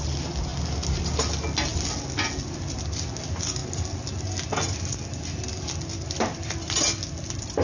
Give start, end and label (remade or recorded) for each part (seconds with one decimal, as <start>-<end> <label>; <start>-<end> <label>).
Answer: 0.0-7.6 recorded